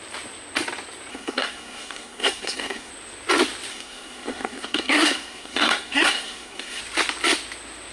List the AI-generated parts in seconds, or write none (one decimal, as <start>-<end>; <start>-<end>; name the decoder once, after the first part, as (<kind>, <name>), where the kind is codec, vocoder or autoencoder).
1.1-2.9 (codec, SNAC); 3.7-6.8